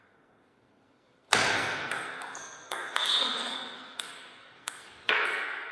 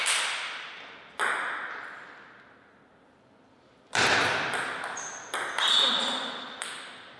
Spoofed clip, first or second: first